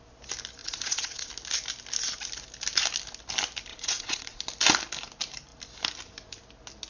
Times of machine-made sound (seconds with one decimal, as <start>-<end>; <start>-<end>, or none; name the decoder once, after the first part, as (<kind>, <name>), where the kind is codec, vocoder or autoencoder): 0.6-1.3 (vocoder, Vocos); 3.7-4.4